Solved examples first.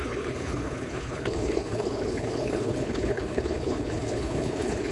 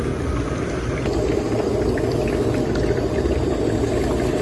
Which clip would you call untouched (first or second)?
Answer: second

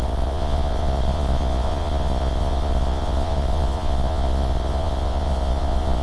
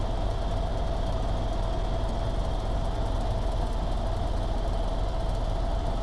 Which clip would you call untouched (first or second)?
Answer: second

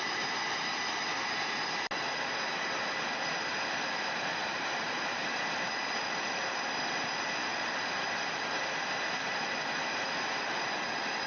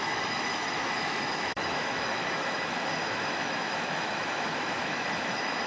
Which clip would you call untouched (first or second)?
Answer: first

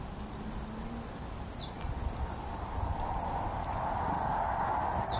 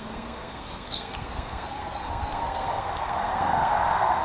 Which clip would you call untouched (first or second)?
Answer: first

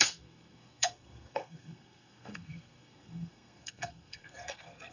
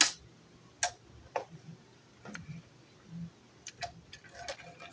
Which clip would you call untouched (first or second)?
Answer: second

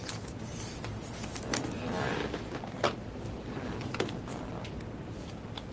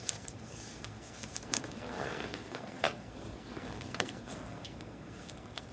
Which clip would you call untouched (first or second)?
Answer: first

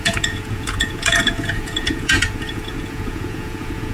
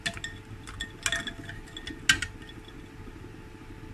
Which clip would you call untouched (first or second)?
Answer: second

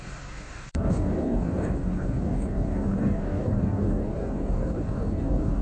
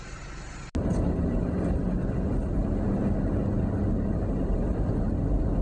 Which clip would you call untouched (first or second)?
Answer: second